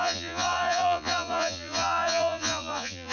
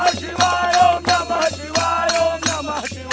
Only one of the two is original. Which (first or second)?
second